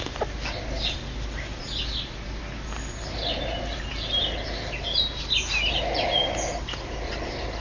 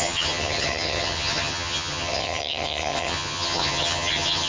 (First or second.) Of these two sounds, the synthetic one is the second